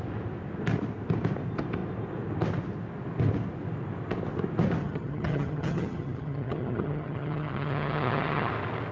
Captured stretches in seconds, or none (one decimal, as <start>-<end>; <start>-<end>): 0.0-4.8; 8.5-8.9